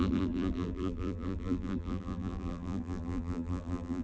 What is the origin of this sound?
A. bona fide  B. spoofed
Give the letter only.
B